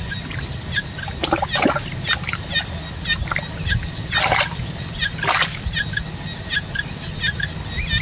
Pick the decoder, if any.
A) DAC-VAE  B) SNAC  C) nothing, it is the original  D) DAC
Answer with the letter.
C